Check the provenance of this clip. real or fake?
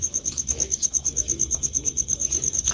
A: fake